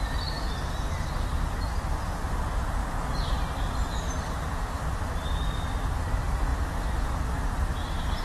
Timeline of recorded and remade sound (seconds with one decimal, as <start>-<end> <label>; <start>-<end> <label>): 0.0-2.8 recorded; 2.8-4.6 remade; 4.6-8.2 recorded